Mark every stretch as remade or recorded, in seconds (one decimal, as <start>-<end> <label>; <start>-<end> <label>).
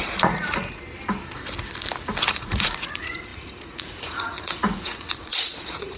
0.0-0.8 remade; 0.8-2.2 recorded; 2.2-6.0 remade